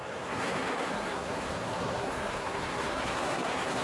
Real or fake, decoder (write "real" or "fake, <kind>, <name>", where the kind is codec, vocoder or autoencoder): fake, codec, SNAC